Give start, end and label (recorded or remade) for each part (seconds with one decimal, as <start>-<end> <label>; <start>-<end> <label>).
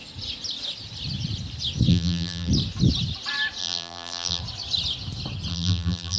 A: 0.0-1.9 recorded; 1.9-2.5 remade; 2.5-3.6 recorded; 3.6-4.4 remade; 4.4-5.5 recorded; 5.5-6.2 remade